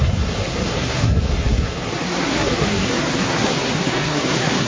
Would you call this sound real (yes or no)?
no